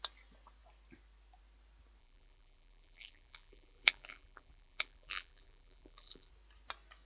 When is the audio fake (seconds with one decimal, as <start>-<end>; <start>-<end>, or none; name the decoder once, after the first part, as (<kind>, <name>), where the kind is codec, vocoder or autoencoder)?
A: 2.0-6.3 (vocoder, BigVGAN v2)